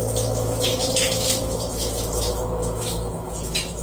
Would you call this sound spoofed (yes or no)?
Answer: yes